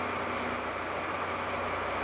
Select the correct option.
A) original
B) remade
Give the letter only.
A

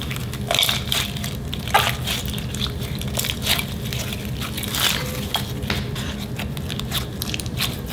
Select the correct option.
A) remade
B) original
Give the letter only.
B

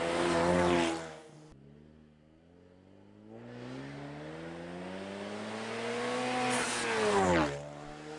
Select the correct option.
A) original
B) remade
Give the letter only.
A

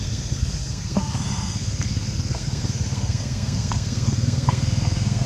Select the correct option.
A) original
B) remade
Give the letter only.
B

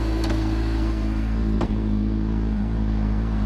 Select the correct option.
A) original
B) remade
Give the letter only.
B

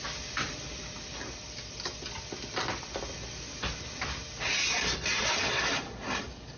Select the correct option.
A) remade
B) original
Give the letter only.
B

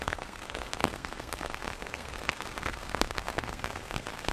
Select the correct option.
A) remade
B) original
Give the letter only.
A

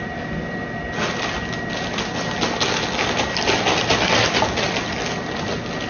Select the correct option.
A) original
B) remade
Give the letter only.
A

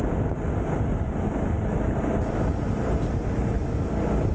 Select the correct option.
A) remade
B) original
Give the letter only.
B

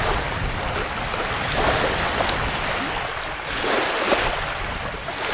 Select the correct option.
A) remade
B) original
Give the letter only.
B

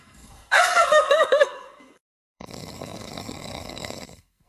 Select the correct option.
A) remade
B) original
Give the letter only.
A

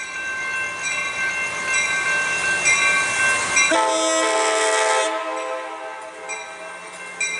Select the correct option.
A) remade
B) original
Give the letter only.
B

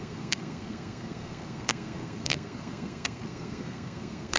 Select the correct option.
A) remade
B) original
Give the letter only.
A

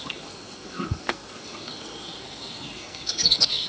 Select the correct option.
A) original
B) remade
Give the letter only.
B